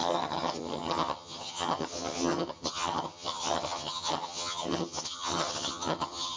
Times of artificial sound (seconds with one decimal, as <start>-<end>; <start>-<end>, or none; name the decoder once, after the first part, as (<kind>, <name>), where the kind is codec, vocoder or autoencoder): 0.0-6.4 (vocoder, HiFi-GAN)